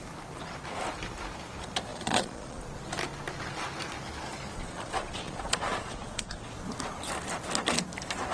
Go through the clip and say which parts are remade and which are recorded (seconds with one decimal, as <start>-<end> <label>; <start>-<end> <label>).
0.0-1.9 recorded; 1.9-2.6 remade; 2.6-4.6 recorded; 4.6-6.5 remade; 6.5-8.3 recorded